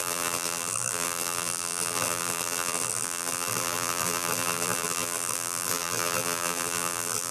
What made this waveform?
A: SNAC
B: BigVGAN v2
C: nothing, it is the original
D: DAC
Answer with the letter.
B